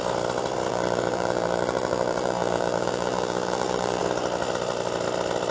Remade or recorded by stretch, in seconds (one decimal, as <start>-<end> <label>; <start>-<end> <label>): 0.0-0.7 recorded; 0.7-4.0 remade; 4.0-5.5 recorded